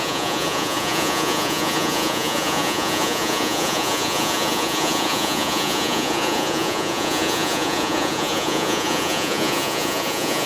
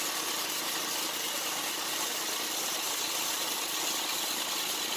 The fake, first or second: first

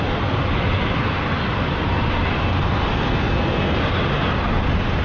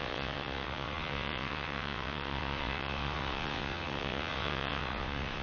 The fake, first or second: second